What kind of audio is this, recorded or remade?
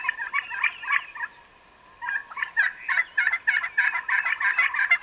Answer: recorded